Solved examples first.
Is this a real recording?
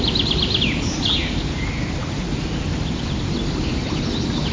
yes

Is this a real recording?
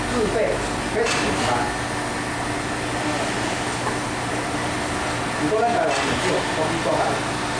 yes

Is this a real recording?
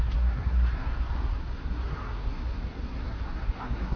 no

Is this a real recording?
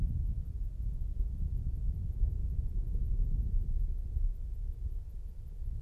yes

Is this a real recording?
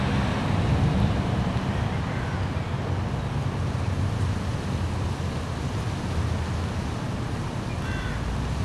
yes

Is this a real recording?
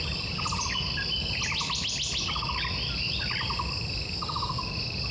yes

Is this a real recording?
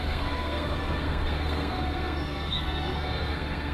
no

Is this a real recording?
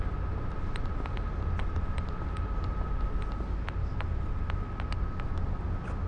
yes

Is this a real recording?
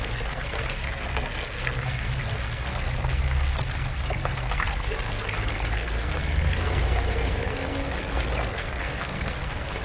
no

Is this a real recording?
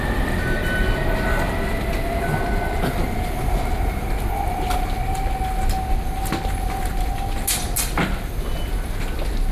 yes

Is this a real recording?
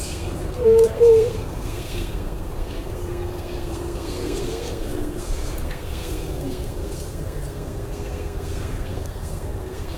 no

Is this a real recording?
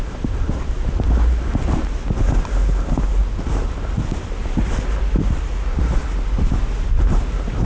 yes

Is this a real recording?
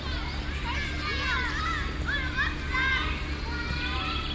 yes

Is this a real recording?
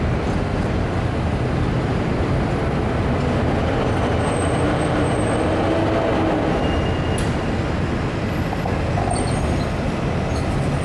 yes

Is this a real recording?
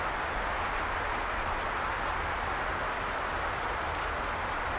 yes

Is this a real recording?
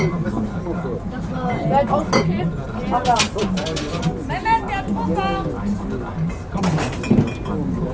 yes